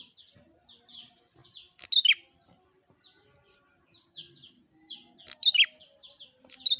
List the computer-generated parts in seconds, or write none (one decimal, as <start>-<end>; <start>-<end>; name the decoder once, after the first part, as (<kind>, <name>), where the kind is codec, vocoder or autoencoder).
5.4-6.2 (vocoder, BigVGAN v2)